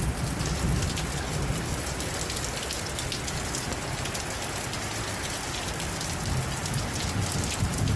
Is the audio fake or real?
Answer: real